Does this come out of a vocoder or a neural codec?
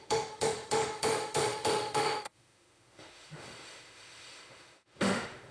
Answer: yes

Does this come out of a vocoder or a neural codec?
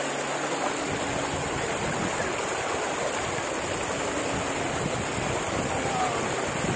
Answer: no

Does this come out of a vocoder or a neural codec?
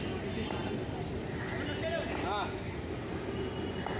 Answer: no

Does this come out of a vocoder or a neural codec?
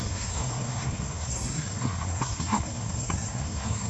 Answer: yes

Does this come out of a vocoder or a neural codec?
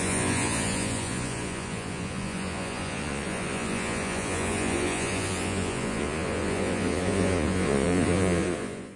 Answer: yes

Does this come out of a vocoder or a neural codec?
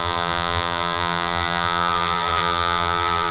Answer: yes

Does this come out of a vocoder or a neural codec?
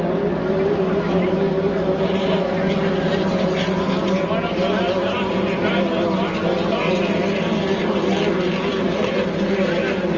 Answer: no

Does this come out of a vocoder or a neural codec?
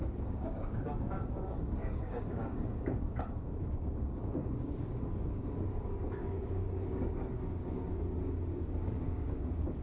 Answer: yes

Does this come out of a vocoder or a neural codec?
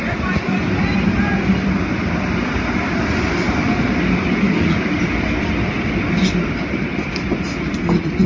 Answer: no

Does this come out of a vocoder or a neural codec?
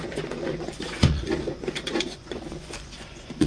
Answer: yes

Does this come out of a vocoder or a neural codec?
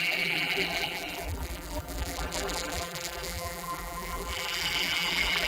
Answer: yes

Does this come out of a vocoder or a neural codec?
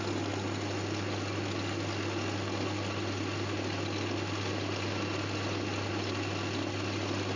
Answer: no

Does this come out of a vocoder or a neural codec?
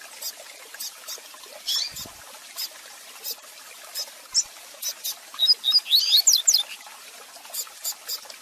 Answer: no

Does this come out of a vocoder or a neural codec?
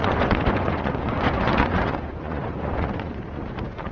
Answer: yes